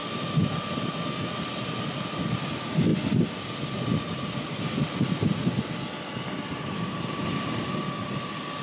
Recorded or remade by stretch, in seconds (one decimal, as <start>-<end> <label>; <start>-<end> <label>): 0.0-8.6 recorded